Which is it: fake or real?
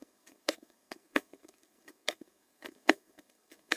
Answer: fake